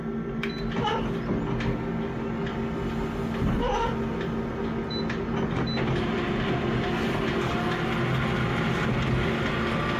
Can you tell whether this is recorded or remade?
recorded